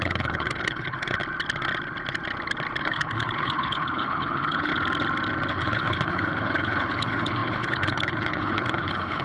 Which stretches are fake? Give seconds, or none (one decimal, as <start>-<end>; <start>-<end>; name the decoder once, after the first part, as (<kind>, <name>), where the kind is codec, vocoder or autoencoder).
0.0-1.2 (codec, HILCodec); 2.8-4.7; 5.5-9.2